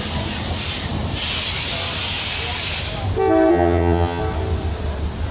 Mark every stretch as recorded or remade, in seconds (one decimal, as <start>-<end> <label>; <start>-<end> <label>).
0.0-3.5 recorded; 3.5-4.2 remade; 4.2-5.3 recorded